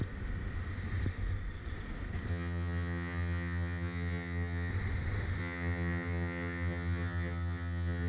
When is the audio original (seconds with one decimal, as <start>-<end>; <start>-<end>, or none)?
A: 0.0-2.3; 4.7-5.4